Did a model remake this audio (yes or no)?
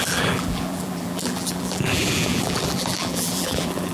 yes